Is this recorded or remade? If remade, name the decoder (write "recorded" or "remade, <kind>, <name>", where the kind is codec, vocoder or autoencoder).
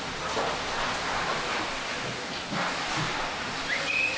recorded